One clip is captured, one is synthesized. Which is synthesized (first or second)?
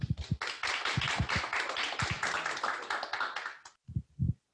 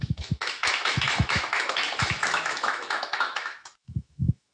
second